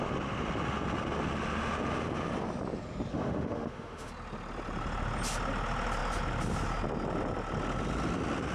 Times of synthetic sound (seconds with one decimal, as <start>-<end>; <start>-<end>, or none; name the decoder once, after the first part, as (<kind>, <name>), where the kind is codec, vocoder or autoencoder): 3.1-4.1 (autoencoder, DAC-VAE)